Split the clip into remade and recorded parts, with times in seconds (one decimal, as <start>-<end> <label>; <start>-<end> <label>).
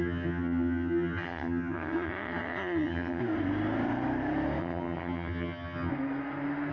0.0-3.2 remade; 3.2-4.6 recorded; 4.6-5.9 remade; 5.9-6.7 recorded